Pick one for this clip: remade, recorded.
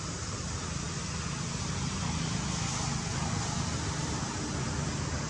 recorded